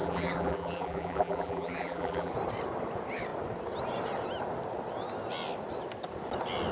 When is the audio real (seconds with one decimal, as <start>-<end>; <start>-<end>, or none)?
2.3-6.7